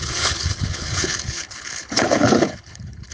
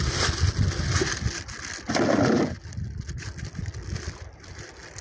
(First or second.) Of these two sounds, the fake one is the first